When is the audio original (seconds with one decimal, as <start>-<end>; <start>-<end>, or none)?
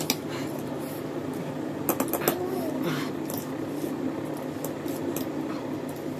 0.0-6.2